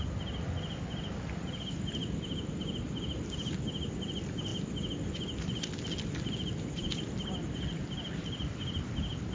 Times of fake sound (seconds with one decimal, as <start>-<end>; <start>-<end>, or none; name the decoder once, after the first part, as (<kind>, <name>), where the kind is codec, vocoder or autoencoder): none